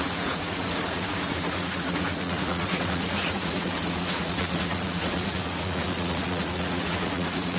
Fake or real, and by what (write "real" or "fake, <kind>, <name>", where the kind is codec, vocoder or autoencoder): fake, vocoder, Vocos